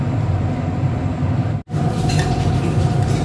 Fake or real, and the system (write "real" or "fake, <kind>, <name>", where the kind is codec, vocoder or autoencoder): real